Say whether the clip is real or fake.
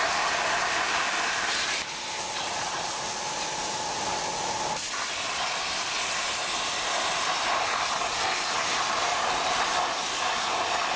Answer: real